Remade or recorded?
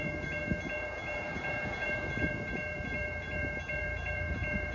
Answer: remade